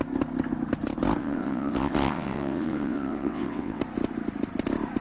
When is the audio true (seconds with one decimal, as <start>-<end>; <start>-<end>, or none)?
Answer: 0.0-1.2; 3.8-5.0